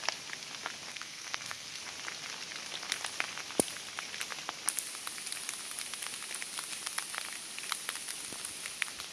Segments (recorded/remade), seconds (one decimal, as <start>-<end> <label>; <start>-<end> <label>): 0.0-0.9 recorded; 0.9-1.8 remade; 1.8-9.1 recorded